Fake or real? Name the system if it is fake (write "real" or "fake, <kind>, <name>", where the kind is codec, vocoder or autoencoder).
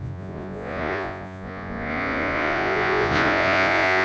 fake, vocoder, Vocos